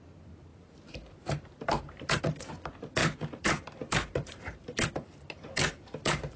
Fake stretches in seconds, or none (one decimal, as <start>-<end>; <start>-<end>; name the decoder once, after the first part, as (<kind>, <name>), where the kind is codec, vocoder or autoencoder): 0.5-2.2 (vocoder, BigVGAN v2); 3.0-4.9; 5.7-6.4